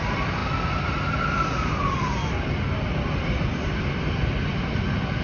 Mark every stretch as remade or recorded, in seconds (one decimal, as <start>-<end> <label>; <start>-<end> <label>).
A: 0.0-5.2 recorded